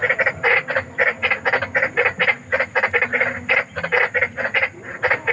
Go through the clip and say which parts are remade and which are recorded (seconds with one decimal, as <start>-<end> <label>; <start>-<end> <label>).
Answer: 0.0-5.3 recorded